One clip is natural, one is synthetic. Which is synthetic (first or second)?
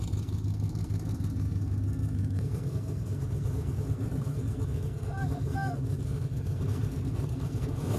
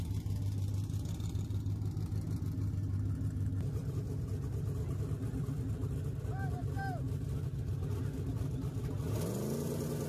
first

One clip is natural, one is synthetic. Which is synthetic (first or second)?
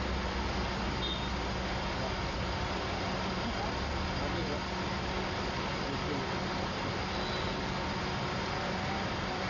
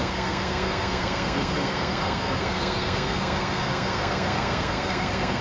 second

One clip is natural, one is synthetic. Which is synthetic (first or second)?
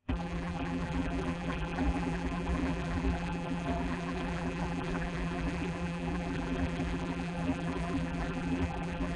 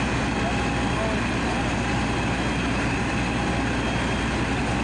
first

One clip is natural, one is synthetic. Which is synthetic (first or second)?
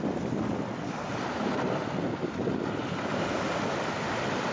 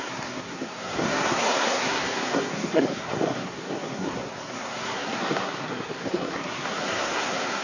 second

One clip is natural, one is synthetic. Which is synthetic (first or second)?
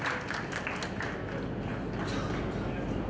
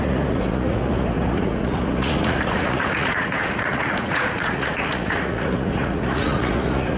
second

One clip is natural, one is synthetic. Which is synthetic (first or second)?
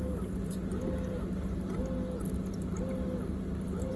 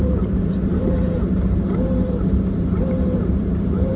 second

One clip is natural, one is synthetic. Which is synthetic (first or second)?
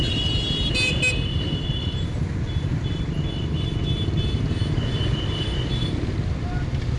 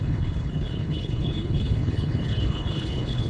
second